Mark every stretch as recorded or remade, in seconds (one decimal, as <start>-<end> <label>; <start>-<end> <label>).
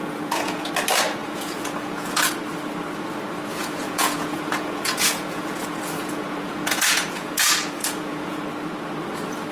0.0-0.7 remade; 0.7-1.2 recorded; 1.2-2.3 remade; 2.3-3.5 recorded; 3.5-8.4 remade; 8.4-9.5 recorded